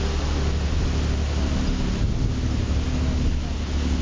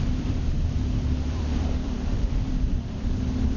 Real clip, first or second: first